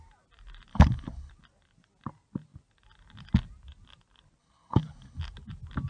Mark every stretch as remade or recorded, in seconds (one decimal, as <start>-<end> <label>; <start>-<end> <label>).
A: 0.0-0.7 recorded; 0.7-1.3 remade; 1.3-4.4 recorded; 4.4-5.2 remade; 5.2-5.9 recorded